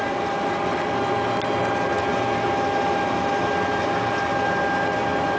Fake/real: real